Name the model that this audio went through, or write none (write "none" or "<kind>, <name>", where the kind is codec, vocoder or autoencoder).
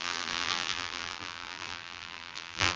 vocoder, BigVGAN v2